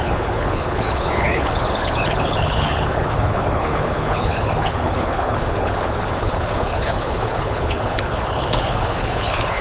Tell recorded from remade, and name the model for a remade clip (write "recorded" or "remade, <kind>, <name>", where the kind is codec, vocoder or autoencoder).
remade, codec, HILCodec